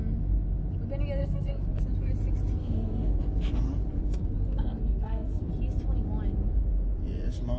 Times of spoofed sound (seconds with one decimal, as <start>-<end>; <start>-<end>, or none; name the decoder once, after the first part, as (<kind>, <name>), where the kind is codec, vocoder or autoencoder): 1.2-1.8 (codec, SNAC); 2.6-3.2; 4.0-5.5